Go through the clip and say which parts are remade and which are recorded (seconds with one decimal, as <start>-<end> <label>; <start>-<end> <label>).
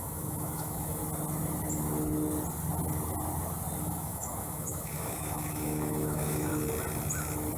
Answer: 0.0-1.0 remade; 1.0-3.8 recorded; 3.8-6.5 remade; 6.5-7.6 recorded